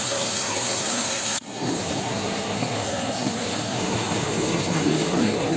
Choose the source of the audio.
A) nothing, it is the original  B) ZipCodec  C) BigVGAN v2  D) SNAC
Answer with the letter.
D